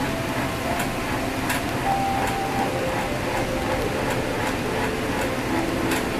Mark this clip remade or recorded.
recorded